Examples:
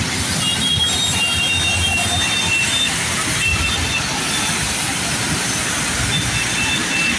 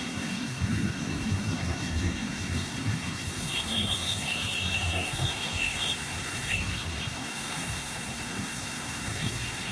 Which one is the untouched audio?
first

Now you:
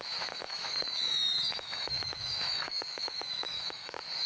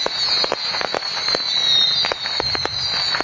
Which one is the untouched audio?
second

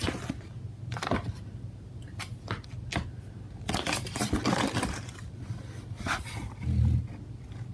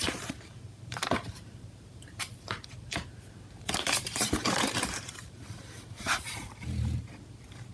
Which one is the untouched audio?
first